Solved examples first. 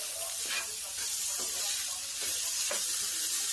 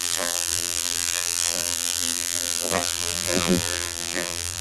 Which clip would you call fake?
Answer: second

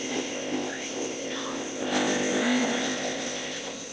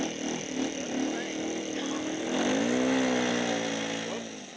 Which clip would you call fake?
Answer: first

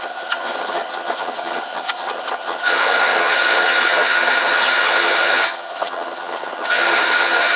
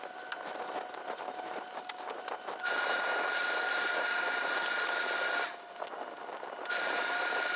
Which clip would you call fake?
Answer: first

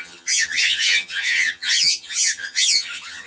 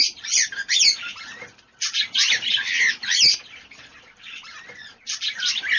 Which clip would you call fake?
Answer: first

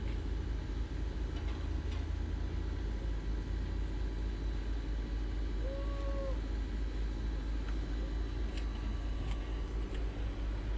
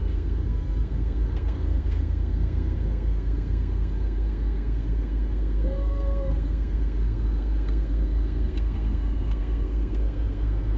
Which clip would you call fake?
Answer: second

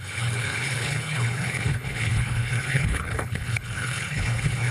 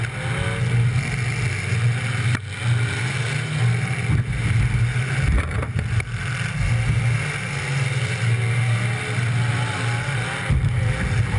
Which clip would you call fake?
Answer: first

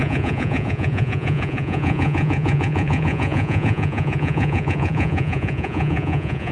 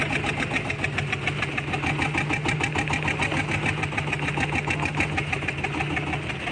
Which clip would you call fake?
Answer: first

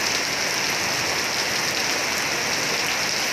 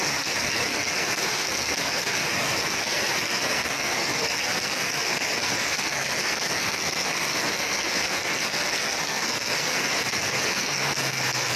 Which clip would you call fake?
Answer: second